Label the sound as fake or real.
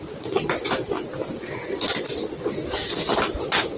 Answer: real